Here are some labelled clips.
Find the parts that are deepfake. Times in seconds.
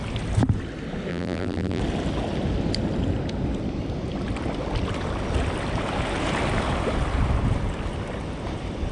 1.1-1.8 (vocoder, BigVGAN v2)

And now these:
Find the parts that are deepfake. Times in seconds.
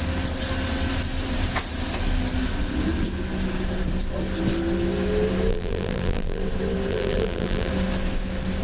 5.5-6.4 (vocoder, BigVGAN v2); 6.9-7.7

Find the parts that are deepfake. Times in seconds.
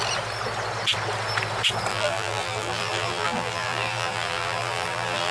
1.9-5.3 (vocoder, BigVGAN v2)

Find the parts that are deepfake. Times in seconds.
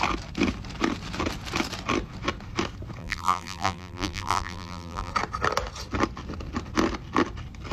3.0-5.1 (vocoder, BigVGAN v2)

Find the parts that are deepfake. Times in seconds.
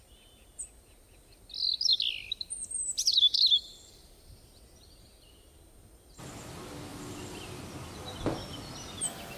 1.9-4.6 (vocoder, BigVGAN v2); 6.9-7.6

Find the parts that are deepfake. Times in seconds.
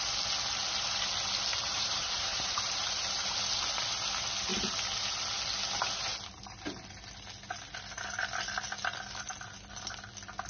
1.5-3.6 (vocoder, BigVGAN v2)